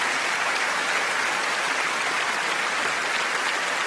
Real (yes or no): yes